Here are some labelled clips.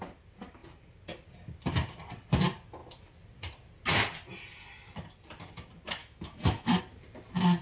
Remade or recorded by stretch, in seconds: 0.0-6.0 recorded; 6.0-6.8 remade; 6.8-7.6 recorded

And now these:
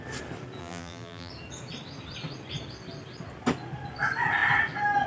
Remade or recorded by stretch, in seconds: 0.0-0.6 recorded; 0.6-1.3 remade; 1.3-5.1 recorded

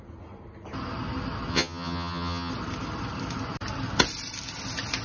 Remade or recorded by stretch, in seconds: 0.0-1.5 recorded; 1.5-2.5 remade; 2.5-5.0 recorded

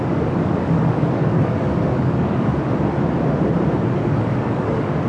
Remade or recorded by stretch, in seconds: 0.0-2.5 remade; 2.5-3.9 recorded; 3.9-5.1 remade

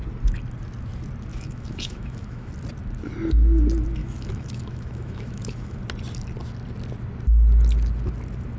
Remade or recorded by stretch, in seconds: 0.0-1.3 recorded; 1.3-2.5 remade; 2.5-4.0 recorded; 4.0-5.8 remade; 5.8-8.6 recorded

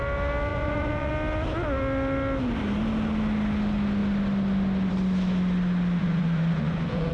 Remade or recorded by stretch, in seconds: 0.0-0.5 recorded; 0.5-1.1 remade; 1.1-6.0 recorded; 6.0-7.1 remade